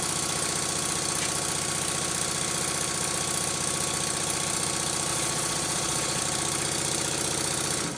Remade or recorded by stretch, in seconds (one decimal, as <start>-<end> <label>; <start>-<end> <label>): 0.0-5.1 recorded; 5.1-6.2 remade; 6.2-8.0 recorded